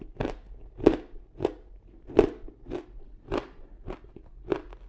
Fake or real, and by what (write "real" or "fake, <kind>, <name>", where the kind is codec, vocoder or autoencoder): real